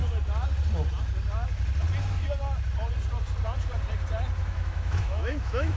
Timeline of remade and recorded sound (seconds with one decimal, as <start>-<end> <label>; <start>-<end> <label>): 0.0-4.4 recorded; 4.4-5.8 remade